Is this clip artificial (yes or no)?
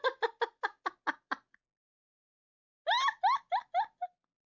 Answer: no